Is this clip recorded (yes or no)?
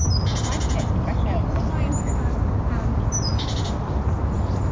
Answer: yes